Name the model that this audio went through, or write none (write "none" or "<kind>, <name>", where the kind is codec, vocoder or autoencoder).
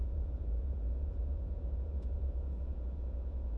vocoder, Vocos